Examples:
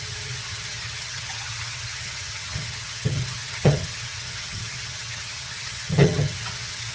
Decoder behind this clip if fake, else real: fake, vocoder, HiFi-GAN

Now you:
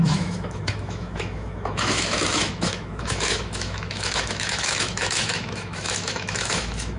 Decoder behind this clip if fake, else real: fake, autoencoder, DAC-VAE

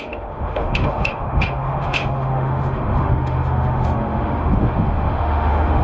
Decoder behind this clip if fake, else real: fake, autoencoder, DAC-VAE